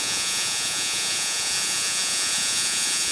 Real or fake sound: fake